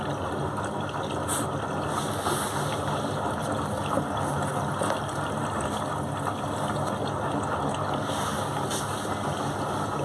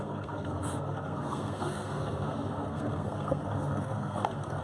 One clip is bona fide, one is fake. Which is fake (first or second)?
second